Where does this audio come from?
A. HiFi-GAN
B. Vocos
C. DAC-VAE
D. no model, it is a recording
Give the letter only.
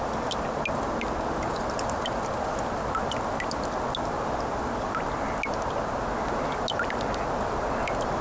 D